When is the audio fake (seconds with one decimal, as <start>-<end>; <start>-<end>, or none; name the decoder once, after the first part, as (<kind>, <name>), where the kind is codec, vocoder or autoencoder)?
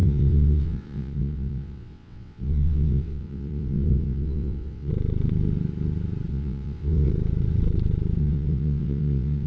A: 0.0-4.9 (vocoder, WaveNeXt); 6.3-7.1; 8.2-9.5